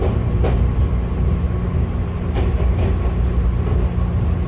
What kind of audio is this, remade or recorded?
recorded